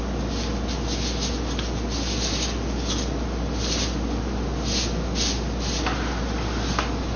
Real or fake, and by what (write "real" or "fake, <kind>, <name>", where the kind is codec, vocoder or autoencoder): real